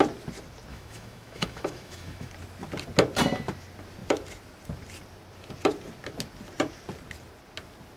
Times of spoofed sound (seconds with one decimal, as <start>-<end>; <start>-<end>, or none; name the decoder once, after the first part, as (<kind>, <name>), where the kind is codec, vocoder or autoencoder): 0.7-2.3 (autoencoder, DAC-VAE)